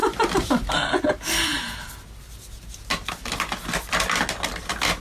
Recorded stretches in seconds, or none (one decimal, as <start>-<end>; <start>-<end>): 0.0-5.0